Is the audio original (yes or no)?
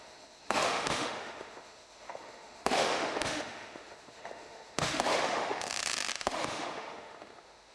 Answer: no